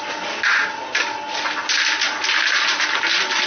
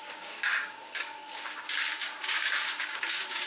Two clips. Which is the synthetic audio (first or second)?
second